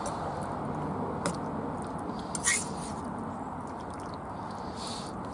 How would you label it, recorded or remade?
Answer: recorded